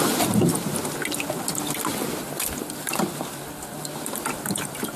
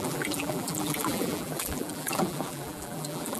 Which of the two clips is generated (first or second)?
second